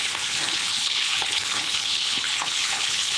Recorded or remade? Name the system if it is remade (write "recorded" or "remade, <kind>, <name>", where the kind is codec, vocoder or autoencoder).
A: remade, codec, HILCodec